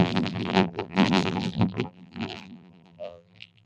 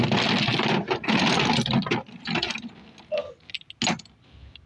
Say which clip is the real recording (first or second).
second